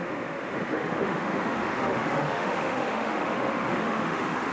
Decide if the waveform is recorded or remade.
remade